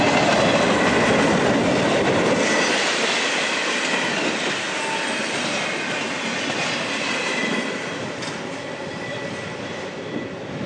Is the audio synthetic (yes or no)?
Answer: no